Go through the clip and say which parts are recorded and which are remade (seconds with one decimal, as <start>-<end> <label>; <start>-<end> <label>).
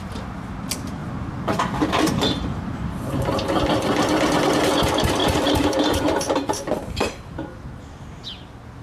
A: 0.0-1.0 recorded; 1.0-3.1 remade; 3.1-5.2 recorded; 5.2-7.2 remade; 7.2-8.8 recorded